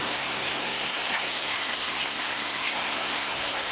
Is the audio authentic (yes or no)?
no